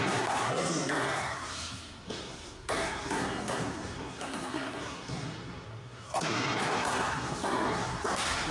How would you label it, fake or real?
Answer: fake